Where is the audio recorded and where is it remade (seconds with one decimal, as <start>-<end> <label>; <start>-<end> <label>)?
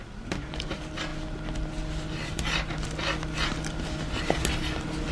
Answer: 0.0-5.1 recorded